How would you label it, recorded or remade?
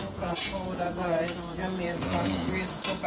remade